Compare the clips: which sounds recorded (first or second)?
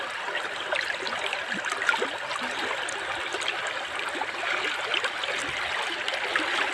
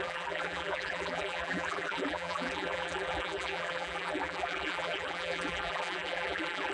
first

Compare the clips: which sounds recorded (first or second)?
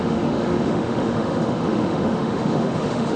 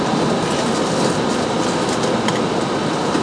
second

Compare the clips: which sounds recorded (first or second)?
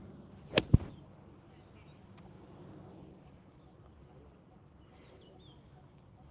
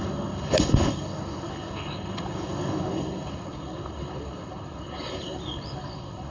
first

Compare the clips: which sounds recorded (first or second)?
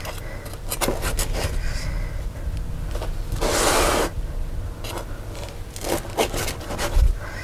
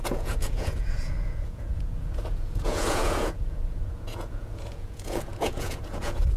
first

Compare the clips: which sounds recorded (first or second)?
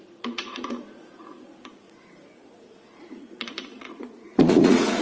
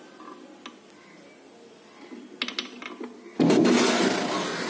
second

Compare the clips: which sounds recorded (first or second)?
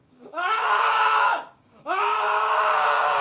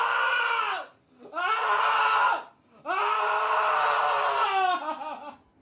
second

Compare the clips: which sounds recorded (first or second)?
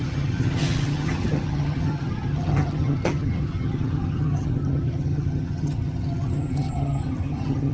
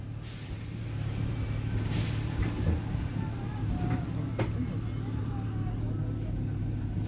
second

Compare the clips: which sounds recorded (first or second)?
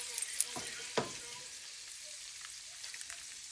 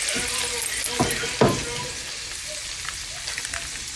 second